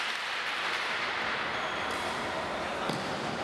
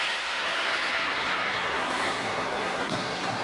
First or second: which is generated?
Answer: second